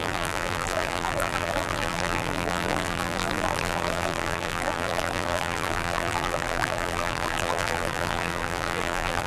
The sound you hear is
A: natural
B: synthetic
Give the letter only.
B